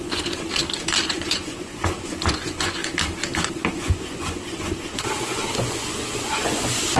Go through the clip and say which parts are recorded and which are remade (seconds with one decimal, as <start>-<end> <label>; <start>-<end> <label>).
0.0-0.6 remade; 0.6-1.1 recorded; 1.1-2.8 remade; 2.8-3.7 recorded; 3.7-7.0 remade